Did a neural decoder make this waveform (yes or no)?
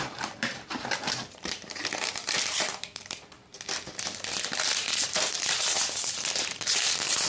yes